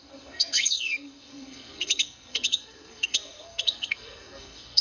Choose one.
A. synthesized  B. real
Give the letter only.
A